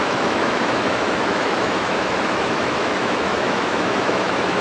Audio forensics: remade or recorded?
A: remade